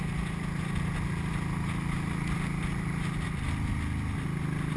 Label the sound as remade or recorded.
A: recorded